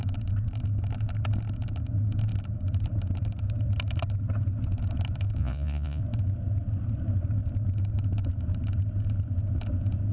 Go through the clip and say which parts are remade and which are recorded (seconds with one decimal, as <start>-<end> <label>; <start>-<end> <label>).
0.0-5.4 recorded; 5.4-6.0 remade; 6.0-10.1 recorded